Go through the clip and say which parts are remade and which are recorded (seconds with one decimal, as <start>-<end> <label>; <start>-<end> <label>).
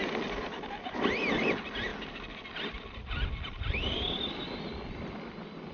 0.0-5.7 recorded